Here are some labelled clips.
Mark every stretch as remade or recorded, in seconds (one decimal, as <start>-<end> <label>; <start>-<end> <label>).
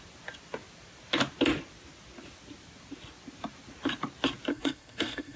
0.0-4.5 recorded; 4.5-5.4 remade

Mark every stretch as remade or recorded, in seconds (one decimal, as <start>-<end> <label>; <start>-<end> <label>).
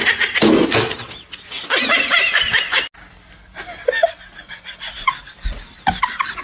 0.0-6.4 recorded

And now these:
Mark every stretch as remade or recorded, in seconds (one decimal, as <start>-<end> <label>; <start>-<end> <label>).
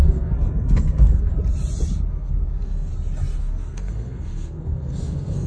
0.0-1.3 remade; 1.3-2.1 recorded; 2.1-2.9 remade; 2.9-3.4 recorded; 3.4-5.5 remade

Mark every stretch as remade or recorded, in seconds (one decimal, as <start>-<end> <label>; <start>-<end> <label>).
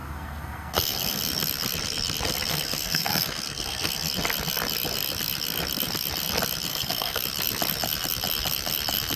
0.0-1.2 remade; 1.2-2.5 recorded; 2.5-4.1 remade; 4.1-6.7 recorded; 6.7-7.2 remade; 7.2-9.2 recorded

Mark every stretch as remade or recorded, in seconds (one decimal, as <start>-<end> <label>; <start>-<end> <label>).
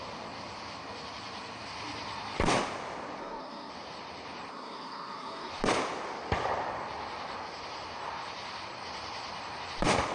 0.0-3.2 recorded; 3.2-3.7 remade; 3.7-4.5 recorded; 4.5-5.5 remade; 5.5-10.1 recorded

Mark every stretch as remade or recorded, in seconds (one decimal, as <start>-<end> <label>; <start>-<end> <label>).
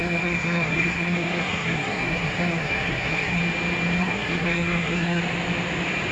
0.0-3.4 remade; 3.4-4.0 recorded; 4.0-5.2 remade; 5.2-6.1 recorded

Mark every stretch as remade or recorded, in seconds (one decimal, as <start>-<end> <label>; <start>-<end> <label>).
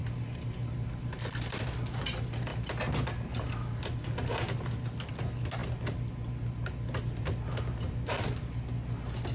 0.0-9.3 recorded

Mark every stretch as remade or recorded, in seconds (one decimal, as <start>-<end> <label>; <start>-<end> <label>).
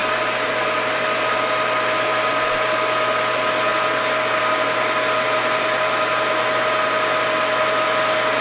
0.0-8.4 recorded